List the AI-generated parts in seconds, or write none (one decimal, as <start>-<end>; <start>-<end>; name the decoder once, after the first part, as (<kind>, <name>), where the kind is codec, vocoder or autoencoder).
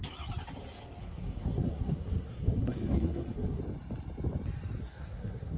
1.0-3.6 (codec, SNAC); 4.8-5.6